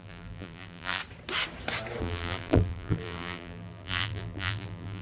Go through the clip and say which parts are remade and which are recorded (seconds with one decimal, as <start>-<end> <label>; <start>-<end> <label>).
0.0-1.0 remade; 1.0-2.0 recorded; 2.0-5.0 remade